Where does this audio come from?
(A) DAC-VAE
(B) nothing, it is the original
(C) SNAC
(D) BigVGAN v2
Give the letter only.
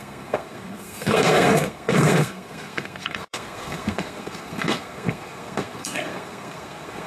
C